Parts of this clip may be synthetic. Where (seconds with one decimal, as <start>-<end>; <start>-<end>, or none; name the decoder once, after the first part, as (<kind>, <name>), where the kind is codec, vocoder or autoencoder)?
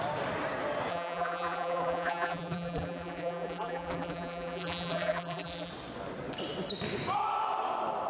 0.9-5.7 (vocoder, BigVGAN v2)